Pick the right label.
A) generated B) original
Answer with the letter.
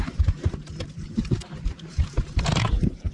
A